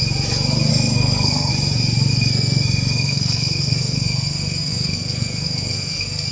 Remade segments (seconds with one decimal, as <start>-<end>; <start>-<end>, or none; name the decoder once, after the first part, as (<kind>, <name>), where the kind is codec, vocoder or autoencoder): 0.7-1.5 (codec, SNAC); 2.1-6.3